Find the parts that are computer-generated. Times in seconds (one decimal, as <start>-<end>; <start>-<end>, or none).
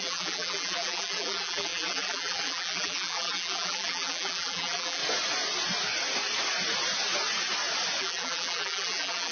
0.0-5.0; 8.0-9.3